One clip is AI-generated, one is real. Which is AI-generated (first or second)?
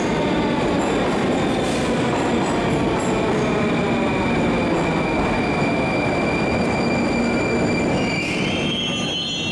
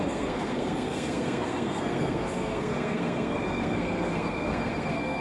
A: second